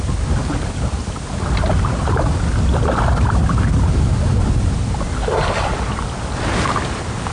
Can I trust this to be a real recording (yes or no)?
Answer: yes